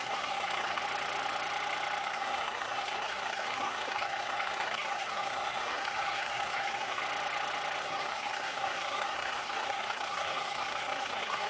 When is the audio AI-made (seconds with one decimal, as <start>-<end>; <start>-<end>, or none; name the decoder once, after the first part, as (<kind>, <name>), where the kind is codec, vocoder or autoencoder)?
0.0-0.8 (codec, SNAC); 2.0-7.0; 7.8-11.5